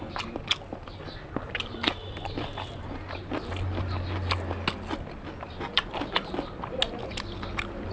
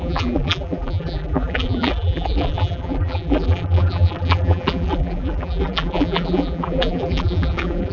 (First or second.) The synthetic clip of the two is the second